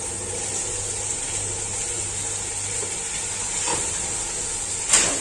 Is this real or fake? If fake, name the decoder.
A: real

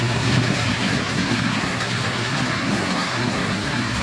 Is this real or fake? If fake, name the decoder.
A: fake, codec, SNAC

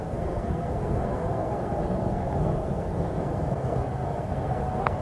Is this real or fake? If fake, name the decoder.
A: fake, codec, SNAC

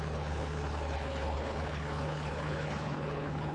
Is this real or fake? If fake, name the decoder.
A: fake, codec, HILCodec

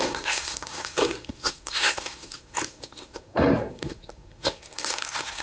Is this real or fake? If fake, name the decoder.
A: fake, codec, SNAC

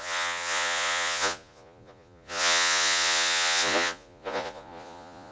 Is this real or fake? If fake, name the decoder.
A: fake, vocoder, Vocos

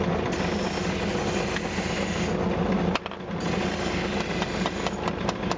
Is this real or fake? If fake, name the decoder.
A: real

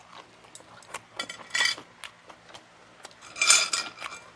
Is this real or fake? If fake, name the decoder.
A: real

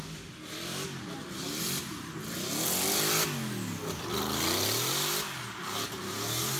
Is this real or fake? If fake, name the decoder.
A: real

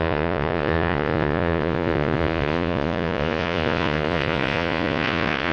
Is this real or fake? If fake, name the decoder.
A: fake, vocoder, Vocos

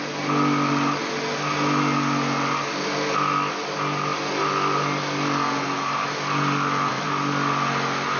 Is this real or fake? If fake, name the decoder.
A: real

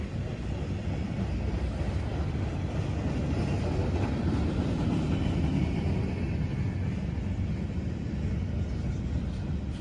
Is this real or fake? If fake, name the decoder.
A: real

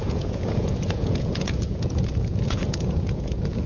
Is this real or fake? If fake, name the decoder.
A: fake, vocoder, Vocos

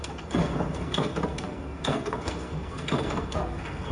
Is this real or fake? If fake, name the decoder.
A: fake, codec, SNAC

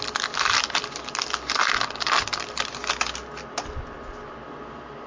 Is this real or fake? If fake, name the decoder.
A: real